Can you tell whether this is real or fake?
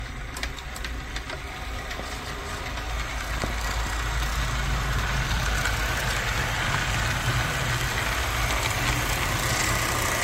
real